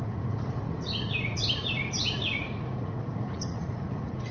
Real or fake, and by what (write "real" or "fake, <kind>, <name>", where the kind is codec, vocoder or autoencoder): fake, vocoder, Vocos